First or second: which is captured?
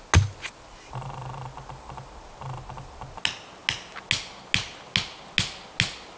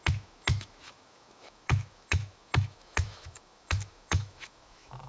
first